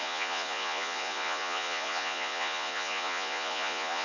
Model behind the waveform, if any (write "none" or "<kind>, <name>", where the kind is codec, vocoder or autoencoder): vocoder, Vocos